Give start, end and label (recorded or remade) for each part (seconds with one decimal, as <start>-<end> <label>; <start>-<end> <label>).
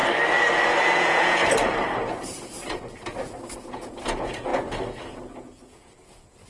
0.0-0.8 recorded; 0.8-1.4 remade; 1.4-3.6 recorded; 3.6-4.5 remade; 4.5-5.2 recorded; 5.2-6.5 remade